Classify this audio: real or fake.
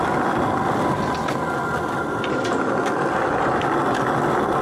real